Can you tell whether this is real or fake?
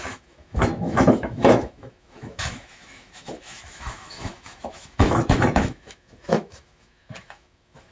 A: fake